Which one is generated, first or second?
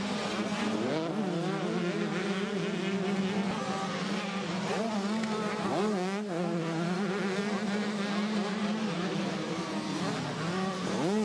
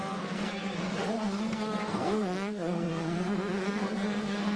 second